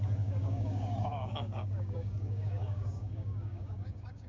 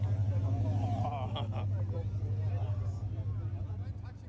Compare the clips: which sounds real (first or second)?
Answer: second